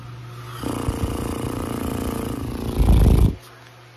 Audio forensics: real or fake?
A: real